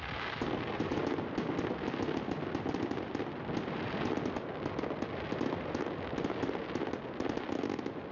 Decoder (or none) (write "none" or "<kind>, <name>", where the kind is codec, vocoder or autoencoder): none